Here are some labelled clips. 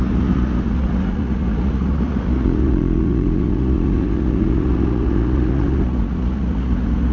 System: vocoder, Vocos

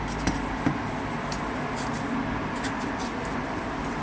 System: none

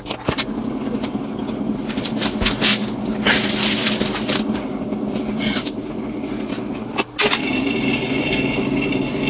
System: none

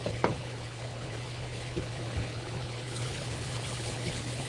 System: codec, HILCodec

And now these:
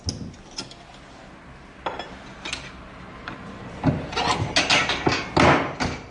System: none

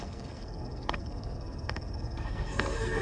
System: codec, SNAC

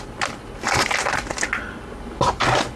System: none